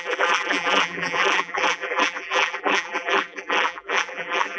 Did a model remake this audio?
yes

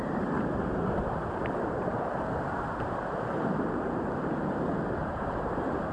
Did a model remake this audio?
yes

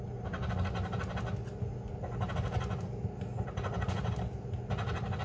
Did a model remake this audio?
no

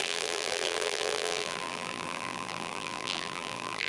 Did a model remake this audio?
yes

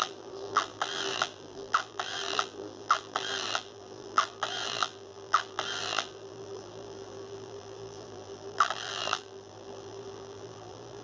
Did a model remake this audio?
yes